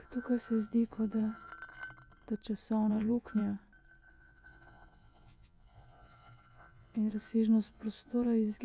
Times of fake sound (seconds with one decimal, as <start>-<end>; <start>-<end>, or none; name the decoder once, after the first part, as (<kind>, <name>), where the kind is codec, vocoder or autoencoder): 0.0-1.5 (vocoder, Vocos); 2.9-3.4; 4.1-8.6